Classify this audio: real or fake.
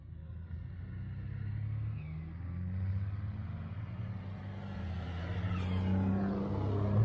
real